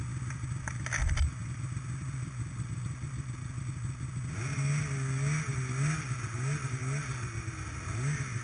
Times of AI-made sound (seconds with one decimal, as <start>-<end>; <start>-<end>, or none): none